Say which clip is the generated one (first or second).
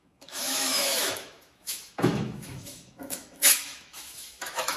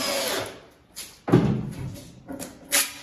first